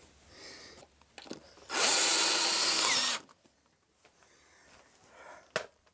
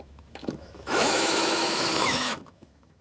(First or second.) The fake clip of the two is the second